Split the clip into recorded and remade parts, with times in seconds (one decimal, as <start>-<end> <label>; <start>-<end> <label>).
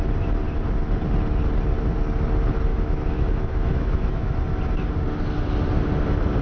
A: 0.0-2.7 recorded; 2.7-4.3 remade; 4.3-6.4 recorded